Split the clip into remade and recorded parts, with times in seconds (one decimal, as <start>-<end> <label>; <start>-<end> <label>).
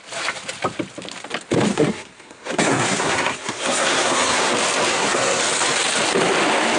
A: 0.0-1.7 recorded; 1.7-4.5 remade; 4.5-4.9 recorded; 4.9-5.4 remade; 5.4-6.8 recorded